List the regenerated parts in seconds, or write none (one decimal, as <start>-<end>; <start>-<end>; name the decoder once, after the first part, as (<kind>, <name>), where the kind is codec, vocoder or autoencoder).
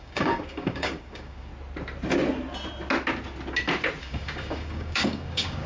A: 0.0-1.5 (codec, DAC); 4.0-5.7